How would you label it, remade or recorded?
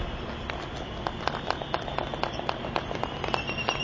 recorded